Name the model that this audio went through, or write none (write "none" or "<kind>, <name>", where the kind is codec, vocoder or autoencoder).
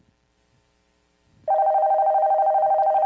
none